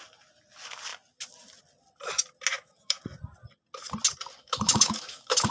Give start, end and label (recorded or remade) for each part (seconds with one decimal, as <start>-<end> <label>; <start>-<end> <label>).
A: 0.0-2.5 recorded; 2.5-3.0 remade; 3.0-4.4 recorded; 4.4-5.5 remade